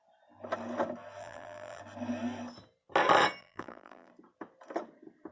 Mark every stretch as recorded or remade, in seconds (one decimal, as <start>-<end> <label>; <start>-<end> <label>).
0.0-1.2 recorded; 1.2-1.8 remade; 1.8-3.4 recorded; 3.4-4.1 remade; 4.1-5.3 recorded